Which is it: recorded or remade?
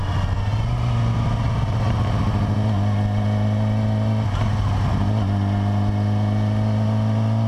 recorded